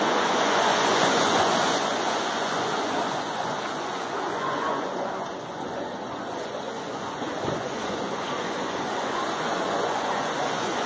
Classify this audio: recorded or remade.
remade